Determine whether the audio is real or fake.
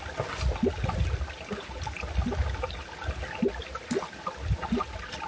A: real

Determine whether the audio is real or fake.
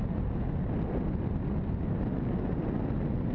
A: real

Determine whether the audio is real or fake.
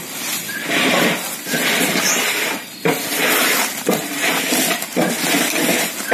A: real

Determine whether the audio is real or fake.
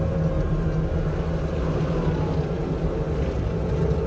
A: real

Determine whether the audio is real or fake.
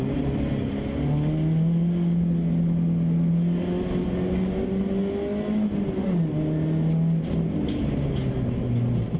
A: real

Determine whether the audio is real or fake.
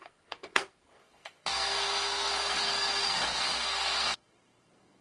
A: fake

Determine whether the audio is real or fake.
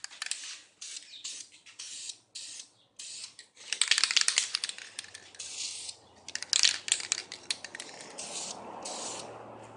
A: real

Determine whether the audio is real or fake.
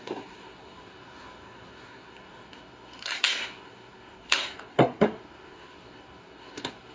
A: fake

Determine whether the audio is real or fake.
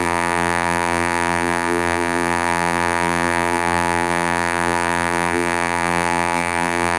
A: fake